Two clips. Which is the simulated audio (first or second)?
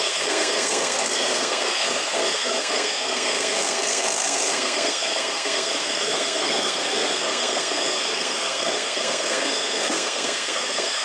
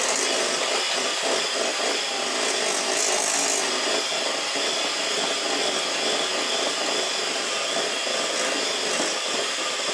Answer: first